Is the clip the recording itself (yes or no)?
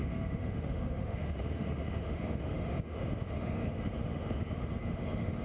no